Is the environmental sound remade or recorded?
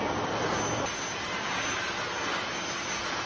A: recorded